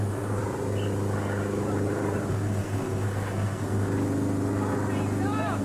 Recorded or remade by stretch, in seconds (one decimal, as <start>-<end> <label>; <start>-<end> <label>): 0.0-0.4 remade; 0.4-2.3 recorded; 2.3-3.9 remade; 3.9-5.6 recorded